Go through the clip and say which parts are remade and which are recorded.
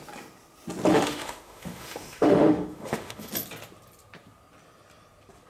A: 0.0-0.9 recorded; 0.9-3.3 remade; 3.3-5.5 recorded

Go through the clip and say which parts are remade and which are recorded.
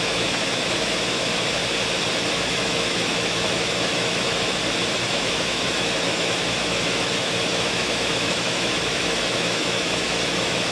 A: 0.0-1.6 remade; 1.6-2.4 recorded; 2.4-4.6 remade; 4.6-5.1 recorded; 5.1-10.7 remade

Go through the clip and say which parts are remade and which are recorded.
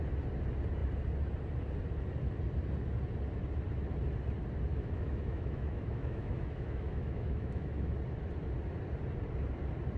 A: 0.0-4.7 recorded; 4.7-7.9 remade; 7.9-10.0 recorded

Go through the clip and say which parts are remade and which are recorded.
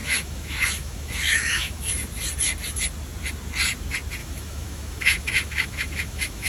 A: 0.0-1.9 remade; 1.9-4.2 recorded; 4.2-6.5 remade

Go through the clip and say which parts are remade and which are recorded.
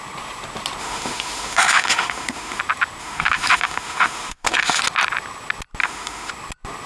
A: 0.0-0.8 recorded; 0.8-2.6 remade; 2.6-3.0 recorded; 3.0-4.8 remade; 4.8-5.8 recorded; 5.8-6.3 remade; 6.3-6.9 recorded